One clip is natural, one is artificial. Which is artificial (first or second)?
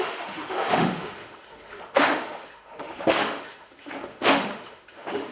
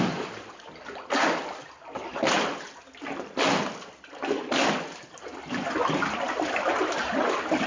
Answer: first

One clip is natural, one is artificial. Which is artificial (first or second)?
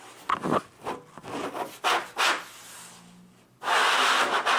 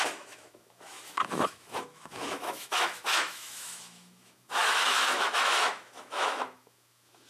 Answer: second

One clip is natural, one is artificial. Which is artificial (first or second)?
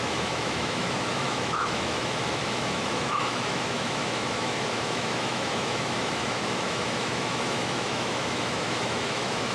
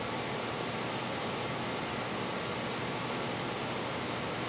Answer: first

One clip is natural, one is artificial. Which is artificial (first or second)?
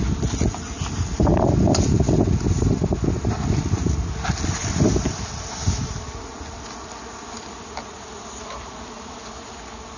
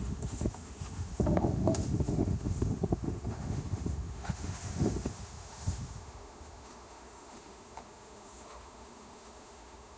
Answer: second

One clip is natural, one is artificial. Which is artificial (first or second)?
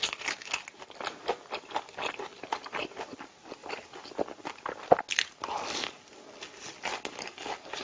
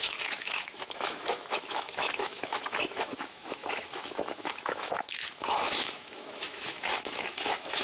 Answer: second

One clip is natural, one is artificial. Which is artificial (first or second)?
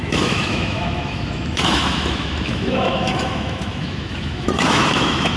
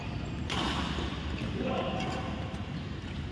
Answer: first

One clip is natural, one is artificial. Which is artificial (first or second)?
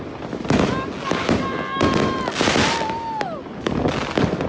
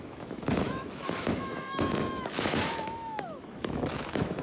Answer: second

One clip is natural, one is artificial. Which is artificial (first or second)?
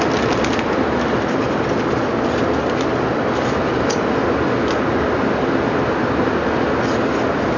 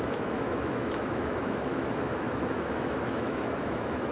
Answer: second